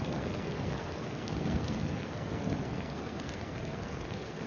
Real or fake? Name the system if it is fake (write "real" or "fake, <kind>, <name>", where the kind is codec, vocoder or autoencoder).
fake, codec, SNAC